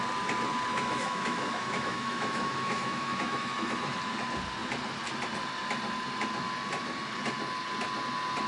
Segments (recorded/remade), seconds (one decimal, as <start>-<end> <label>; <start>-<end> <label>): 0.0-0.7 recorded; 0.7-4.1 remade; 4.1-8.5 recorded